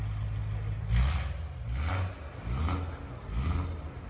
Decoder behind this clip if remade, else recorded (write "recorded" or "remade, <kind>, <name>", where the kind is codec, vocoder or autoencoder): recorded